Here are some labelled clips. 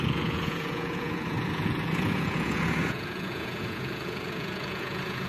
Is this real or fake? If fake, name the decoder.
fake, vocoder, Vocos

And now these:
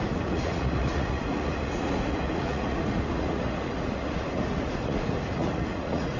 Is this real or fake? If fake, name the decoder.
fake, vocoder, Vocos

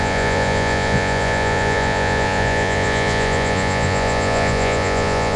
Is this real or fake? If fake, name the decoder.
fake, vocoder, Vocos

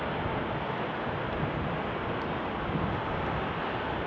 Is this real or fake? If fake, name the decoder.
real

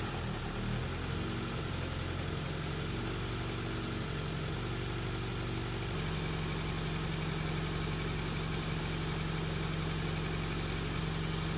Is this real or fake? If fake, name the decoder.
real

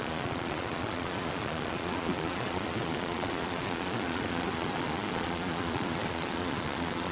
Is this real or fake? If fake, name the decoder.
fake, vocoder, Vocos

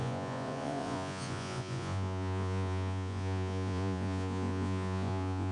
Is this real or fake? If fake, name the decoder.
fake, vocoder, Vocos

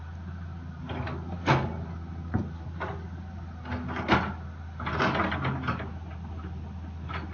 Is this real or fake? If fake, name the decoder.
real